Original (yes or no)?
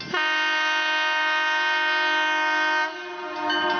yes